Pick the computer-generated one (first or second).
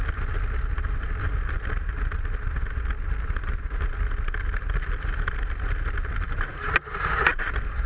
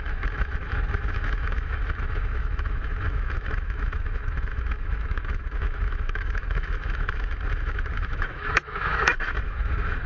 second